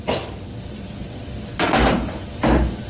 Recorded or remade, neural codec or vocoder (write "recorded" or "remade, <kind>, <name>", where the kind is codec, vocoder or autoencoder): recorded